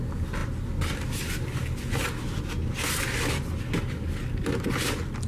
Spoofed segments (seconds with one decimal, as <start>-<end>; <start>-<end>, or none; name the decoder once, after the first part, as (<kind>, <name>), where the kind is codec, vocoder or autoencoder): none